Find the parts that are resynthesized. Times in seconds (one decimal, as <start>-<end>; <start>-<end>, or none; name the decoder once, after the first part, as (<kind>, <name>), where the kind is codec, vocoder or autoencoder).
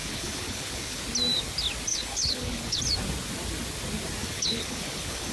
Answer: 0.0-1.0 (codec, HILCodec); 1.9-2.8; 4.2-5.3